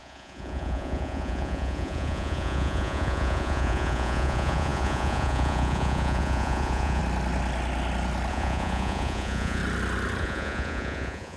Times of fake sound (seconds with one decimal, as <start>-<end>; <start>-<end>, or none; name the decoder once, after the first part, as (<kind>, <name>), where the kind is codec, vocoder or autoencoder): 0.0-7.0 (vocoder, Vocos); 8.3-9.6; 10.2-11.4